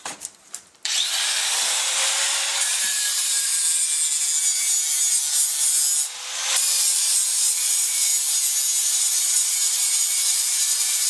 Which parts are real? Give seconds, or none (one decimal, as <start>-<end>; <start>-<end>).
3.5-6.5; 8.1-8.8